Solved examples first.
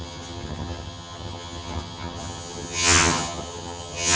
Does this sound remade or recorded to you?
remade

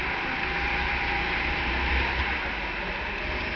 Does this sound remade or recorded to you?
recorded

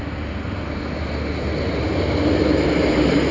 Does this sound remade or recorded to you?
recorded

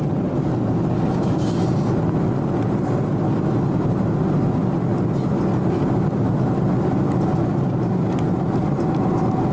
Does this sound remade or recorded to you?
recorded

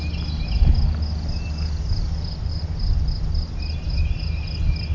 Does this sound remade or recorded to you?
recorded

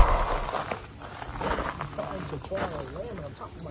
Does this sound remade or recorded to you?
recorded